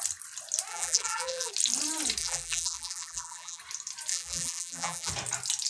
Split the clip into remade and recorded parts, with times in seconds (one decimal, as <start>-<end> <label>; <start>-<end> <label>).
0.0-0.7 recorded; 0.7-1.5 remade; 1.5-2.2 recorded; 2.2-3.6 remade; 3.6-4.1 recorded; 4.1-5.1 remade; 5.1-5.7 recorded